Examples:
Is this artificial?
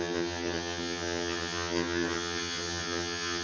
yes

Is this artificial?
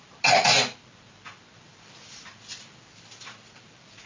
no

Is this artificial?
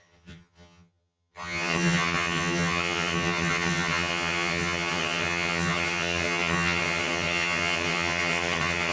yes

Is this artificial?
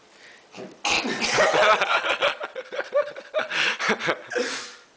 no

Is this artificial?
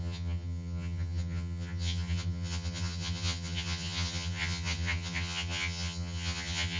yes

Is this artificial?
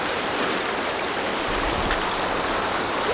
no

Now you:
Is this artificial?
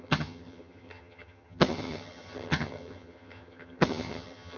yes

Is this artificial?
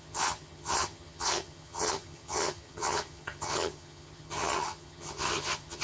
yes